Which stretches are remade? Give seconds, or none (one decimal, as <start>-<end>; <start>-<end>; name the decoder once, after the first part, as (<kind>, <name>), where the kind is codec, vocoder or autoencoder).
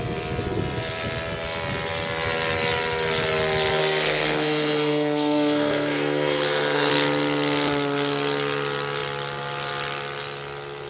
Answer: 3.8-6.9 (codec, SNAC)